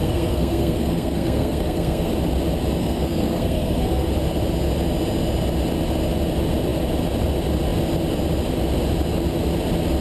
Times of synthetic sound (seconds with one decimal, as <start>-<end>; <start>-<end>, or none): 0.0-2.1; 2.8-4.1